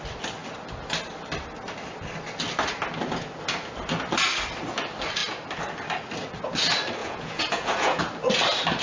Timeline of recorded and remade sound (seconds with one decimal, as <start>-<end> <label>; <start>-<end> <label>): 0.0-7.0 recorded; 7.0-8.0 remade; 8.0-8.8 recorded